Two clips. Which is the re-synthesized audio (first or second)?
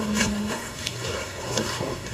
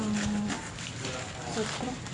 first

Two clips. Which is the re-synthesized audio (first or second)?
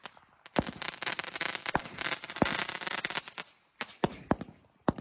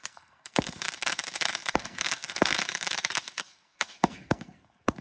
second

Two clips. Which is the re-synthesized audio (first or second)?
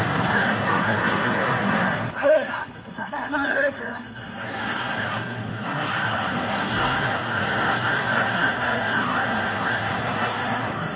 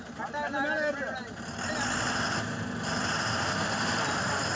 first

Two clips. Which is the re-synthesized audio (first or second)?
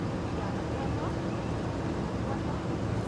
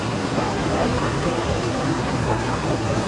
second